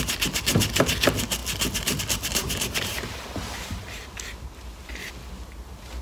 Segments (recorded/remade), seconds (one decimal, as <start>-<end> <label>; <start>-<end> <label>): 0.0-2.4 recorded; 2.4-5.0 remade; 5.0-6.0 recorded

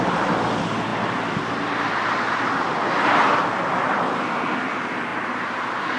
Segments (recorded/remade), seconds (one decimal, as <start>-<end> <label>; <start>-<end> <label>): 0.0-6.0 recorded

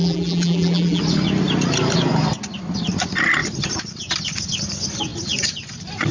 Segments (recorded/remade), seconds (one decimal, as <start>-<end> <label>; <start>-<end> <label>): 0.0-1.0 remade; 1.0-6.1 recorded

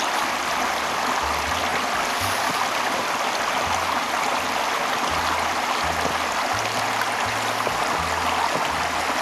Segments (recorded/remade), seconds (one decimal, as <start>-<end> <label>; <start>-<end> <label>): 0.0-9.2 recorded

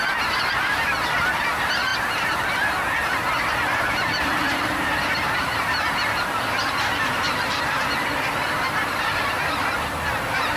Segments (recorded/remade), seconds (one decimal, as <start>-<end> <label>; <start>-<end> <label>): 0.0-10.6 remade